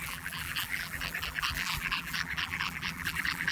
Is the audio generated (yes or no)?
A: yes